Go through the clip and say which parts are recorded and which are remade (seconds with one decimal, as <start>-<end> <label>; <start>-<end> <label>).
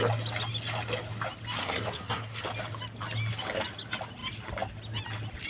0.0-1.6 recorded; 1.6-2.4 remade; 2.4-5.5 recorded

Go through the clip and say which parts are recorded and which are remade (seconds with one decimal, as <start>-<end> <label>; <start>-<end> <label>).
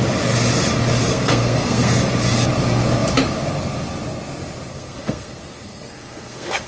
0.0-1.1 recorded; 1.1-2.0 remade; 2.0-4.7 recorded; 4.7-6.7 remade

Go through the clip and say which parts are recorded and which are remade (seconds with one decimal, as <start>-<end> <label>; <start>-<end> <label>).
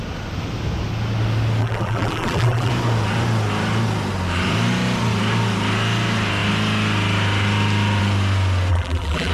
0.0-1.6 recorded; 1.6-2.7 remade; 2.7-8.7 recorded; 8.7-9.3 remade